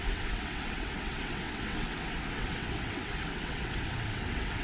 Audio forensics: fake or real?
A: fake